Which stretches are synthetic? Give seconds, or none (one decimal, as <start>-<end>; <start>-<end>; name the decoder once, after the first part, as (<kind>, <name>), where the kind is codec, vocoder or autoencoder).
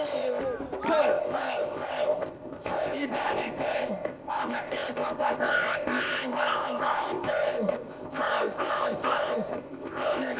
0.0-0.4 (codec, ZipCodec); 1.0-10.4